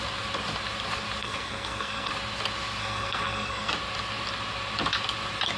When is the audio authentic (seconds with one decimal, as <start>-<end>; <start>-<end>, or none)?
0.0-1.2; 2.1-2.8; 3.7-5.6